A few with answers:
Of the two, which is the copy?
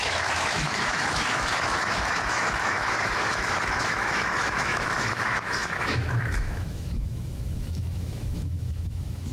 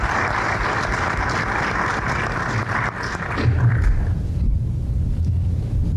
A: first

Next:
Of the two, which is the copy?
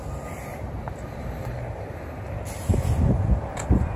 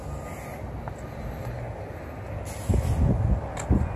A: first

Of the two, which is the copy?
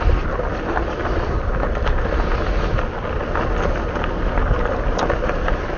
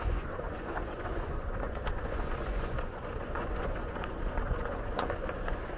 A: second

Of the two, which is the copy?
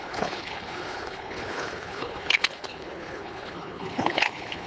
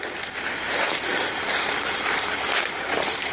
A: first